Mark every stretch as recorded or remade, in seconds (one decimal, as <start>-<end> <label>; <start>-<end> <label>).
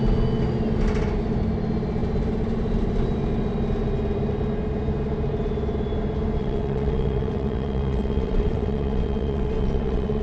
0.0-6.4 recorded; 6.4-10.2 remade